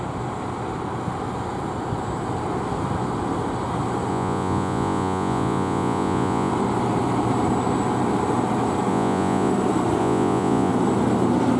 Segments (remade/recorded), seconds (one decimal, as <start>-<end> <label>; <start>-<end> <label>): 0.0-4.1 recorded; 4.1-6.5 remade; 6.5-8.9 recorded; 8.9-9.5 remade; 9.5-10.0 recorded; 10.0-10.7 remade; 10.7-11.6 recorded